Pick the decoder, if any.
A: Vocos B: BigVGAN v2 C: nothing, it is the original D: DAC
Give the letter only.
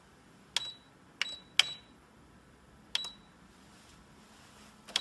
C